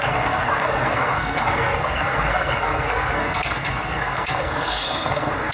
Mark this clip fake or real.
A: fake